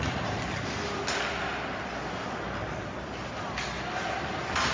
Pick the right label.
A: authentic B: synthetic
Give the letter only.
A